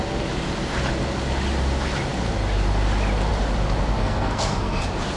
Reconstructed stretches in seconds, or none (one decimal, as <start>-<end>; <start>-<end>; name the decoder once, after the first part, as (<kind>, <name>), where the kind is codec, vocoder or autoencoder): 4.0-4.8 (codec, SNAC)

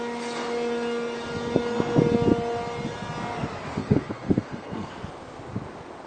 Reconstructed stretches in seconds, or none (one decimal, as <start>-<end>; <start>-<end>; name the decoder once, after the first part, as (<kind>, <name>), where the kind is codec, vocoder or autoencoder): 3.8-4.9 (codec, SNAC)

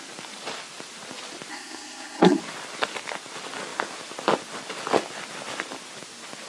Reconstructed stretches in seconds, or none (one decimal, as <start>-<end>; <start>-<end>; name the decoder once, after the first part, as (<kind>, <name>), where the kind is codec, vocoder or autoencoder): 1.5-2.4 (codec, SNAC)

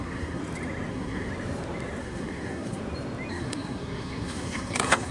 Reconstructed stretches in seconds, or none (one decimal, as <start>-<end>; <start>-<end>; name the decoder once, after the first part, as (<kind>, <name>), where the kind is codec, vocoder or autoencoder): 0.0-0.4 (codec, SNAC); 0.9-1.3; 2.0-2.8; 3.3-5.1